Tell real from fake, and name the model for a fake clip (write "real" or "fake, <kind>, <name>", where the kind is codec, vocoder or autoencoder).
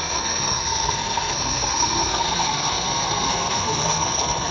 fake, codec, SNAC